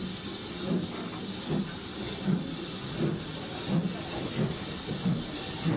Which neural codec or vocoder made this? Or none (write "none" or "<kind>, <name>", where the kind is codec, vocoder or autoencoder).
none